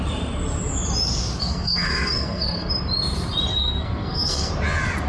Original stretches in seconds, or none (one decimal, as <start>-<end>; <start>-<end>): 0.0-1.4; 2.7-3.5; 4.5-5.1